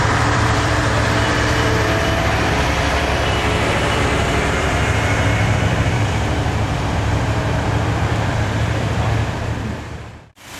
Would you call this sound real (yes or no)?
no